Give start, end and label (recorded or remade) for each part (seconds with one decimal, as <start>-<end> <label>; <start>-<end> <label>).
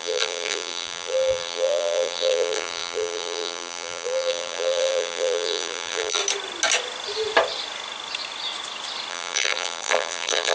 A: 0.0-6.2 remade; 6.2-9.1 recorded; 9.1-10.5 remade